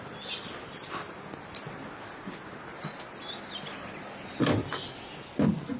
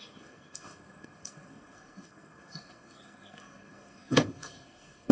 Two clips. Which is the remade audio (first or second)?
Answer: second